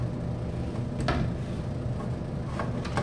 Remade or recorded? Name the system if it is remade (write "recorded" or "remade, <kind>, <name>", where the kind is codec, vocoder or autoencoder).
recorded